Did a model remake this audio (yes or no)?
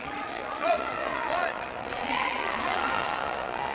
yes